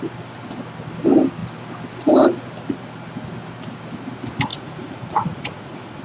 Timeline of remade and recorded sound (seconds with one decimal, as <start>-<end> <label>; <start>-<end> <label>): 0.0-4.5 recorded; 4.5-6.0 remade